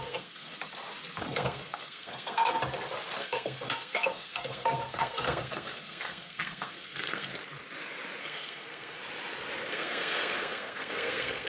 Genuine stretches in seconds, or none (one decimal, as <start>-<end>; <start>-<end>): 0.5-1.2; 2.6-3.2; 7.3-8.2; 9.0-9.7